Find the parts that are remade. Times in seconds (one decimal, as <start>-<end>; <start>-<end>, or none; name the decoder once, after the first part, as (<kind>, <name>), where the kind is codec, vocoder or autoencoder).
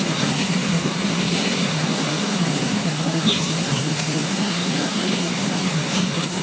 0.0-6.4 (codec, SNAC)